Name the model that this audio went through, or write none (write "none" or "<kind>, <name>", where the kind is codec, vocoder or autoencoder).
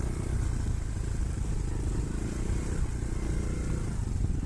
none